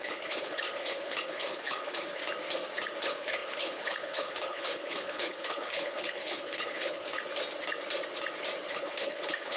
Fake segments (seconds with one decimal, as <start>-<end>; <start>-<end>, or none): 0.0-2.2; 3.0-7.1; 8.7-9.6